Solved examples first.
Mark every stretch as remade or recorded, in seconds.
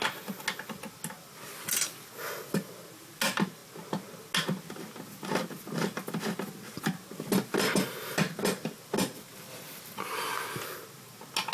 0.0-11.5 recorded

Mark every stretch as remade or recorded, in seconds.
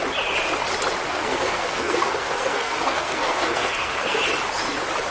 0.0-1.1 recorded; 1.1-4.2 remade; 4.2-5.1 recorded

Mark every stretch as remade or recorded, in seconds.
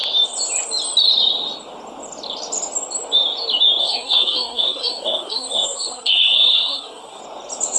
0.0-3.8 recorded; 3.8-7.2 remade; 7.2-7.8 recorded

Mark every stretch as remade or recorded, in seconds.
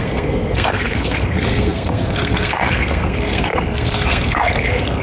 0.0-5.0 remade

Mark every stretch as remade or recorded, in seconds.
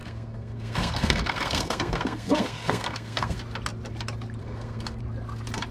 0.0-3.4 remade; 3.4-4.4 recorded; 4.4-5.0 remade; 5.0-5.7 recorded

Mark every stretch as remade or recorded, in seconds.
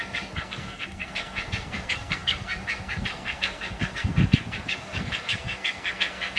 0.0-6.4 remade